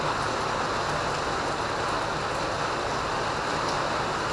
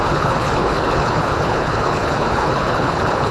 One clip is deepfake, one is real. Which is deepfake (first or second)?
second